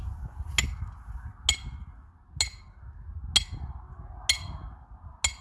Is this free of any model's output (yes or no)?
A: yes